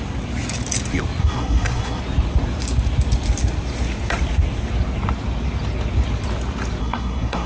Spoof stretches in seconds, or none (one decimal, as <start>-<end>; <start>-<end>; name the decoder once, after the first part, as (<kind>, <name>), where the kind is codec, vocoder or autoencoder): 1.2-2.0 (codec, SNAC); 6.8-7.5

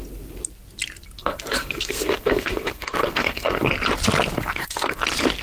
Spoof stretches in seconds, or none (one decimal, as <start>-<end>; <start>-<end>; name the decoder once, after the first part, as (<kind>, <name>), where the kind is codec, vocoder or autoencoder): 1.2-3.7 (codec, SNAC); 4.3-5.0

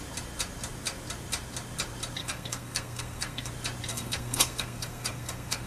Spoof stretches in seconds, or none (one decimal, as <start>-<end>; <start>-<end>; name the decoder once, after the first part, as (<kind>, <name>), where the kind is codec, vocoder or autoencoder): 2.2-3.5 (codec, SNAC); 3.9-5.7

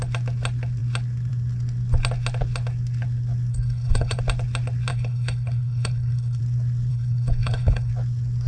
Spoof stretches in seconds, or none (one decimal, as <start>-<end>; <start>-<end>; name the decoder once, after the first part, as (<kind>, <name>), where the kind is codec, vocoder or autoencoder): 3.5-4.2 (codec, HILCodec); 4.9-6.4; 6.9-7.9

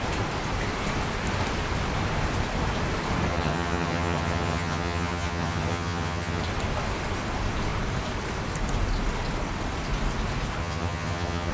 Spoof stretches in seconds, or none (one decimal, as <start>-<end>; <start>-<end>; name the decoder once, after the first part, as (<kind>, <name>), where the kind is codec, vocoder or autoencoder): 3.3-6.4 (vocoder, HiFi-GAN); 10.6-11.5